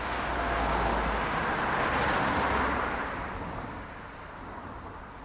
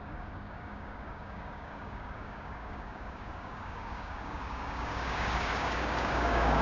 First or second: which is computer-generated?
second